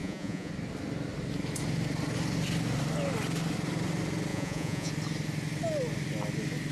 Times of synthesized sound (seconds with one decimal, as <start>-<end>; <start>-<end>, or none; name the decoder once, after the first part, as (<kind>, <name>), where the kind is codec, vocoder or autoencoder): 0.0-0.5 (vocoder, Vocos); 4.3-4.9

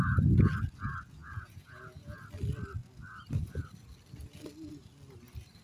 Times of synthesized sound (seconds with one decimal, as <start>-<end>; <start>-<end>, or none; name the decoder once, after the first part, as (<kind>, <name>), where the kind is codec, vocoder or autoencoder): 1.2-2.2 (vocoder, Vocos)

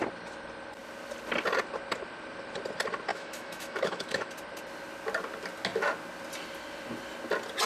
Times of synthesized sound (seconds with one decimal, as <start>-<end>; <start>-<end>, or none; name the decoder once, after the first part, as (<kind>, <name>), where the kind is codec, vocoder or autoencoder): 3.1-4.3 (autoencoder, DAC-VAE)

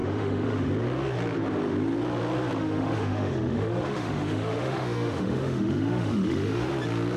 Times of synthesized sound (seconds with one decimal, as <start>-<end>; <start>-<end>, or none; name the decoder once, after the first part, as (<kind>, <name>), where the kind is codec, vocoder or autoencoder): 0.0-0.7 (autoencoder, DAC-VAE); 2.6-6.7